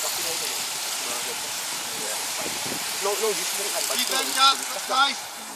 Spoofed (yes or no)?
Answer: yes